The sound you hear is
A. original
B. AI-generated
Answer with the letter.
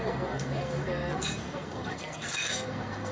B